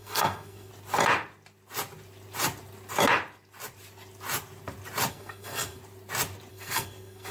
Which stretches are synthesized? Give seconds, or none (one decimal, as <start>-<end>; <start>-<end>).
0.0-0.7; 5.1-5.8; 6.5-7.3